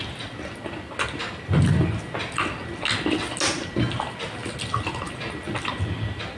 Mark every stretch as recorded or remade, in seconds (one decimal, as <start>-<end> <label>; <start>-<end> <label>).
0.0-6.4 recorded